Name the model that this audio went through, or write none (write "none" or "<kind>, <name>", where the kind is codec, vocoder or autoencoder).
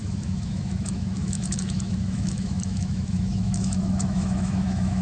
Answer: autoencoder, DAC-VAE